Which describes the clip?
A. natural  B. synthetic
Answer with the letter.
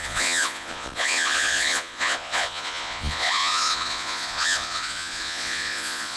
B